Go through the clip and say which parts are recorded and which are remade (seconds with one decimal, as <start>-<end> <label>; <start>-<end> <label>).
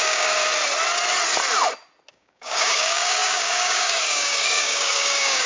0.0-0.4 remade; 0.4-2.1 recorded; 2.1-5.5 remade